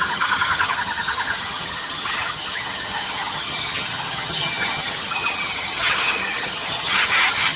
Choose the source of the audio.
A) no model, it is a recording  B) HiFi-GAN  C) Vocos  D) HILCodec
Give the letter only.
B